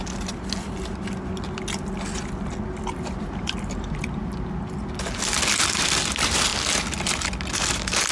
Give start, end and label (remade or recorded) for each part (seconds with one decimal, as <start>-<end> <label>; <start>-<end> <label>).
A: 0.0-8.1 recorded